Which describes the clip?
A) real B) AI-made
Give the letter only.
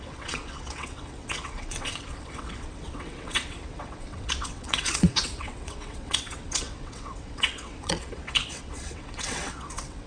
B